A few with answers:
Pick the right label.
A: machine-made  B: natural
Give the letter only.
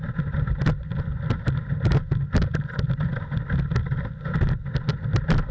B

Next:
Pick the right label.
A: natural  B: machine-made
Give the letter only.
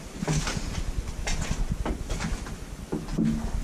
A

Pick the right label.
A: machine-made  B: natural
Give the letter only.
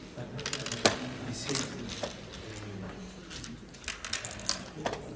B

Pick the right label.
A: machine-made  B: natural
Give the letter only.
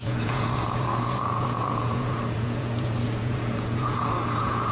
A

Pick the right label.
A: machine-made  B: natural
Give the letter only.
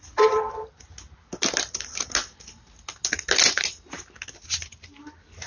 B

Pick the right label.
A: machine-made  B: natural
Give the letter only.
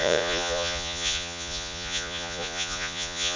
A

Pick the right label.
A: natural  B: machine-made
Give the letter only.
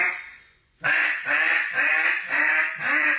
B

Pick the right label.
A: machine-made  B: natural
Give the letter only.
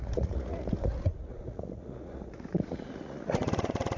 A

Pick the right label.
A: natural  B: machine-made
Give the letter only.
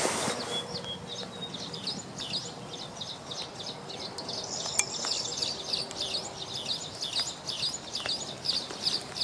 A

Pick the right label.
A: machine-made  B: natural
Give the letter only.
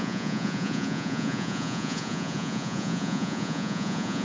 A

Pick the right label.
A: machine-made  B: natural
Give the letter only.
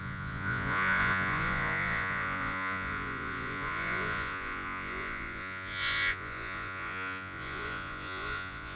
A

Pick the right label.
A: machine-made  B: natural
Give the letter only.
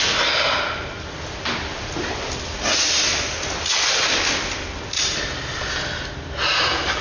B